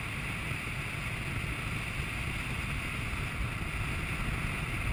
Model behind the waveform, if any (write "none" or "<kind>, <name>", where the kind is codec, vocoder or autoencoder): none